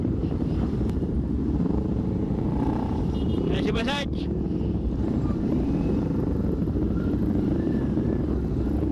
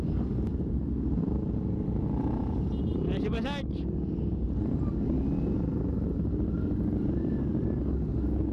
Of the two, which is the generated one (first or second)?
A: first